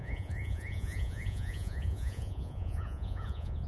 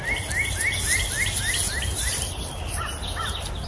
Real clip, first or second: second